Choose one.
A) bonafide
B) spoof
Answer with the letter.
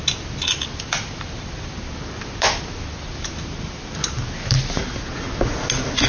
A